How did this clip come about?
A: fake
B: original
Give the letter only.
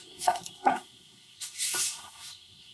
A